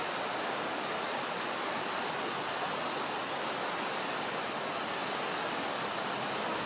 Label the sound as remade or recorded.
recorded